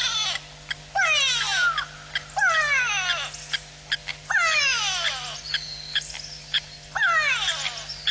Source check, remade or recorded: recorded